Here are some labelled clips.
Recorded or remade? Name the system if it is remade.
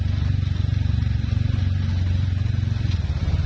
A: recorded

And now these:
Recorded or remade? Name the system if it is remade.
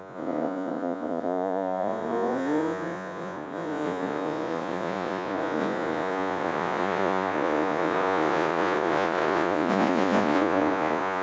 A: remade, vocoder, Vocos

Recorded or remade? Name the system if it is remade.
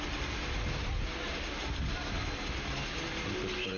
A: recorded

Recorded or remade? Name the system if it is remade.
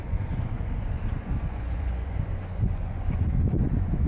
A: remade, vocoder, Vocos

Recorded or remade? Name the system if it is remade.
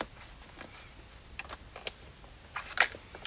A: recorded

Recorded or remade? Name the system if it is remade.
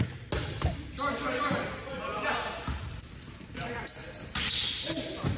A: recorded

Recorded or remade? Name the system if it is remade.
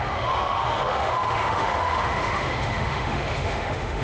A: remade, autoencoder, DAC-VAE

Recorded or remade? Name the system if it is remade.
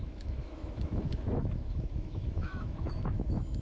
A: remade, autoencoder, DAC-VAE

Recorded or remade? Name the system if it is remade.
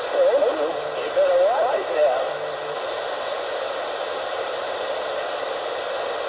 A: recorded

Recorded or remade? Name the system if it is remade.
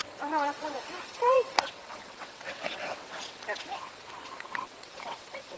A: remade, vocoder, WaveNeXt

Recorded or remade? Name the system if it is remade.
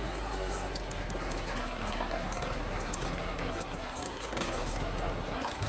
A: remade, codec, SNAC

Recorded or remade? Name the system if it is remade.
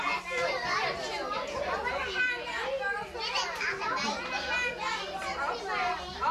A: recorded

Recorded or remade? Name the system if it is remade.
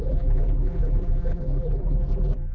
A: remade, vocoder, BigVGAN v2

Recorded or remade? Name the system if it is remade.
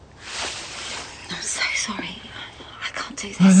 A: recorded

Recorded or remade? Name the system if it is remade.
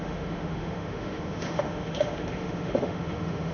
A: remade, autoencoder, DAC-VAE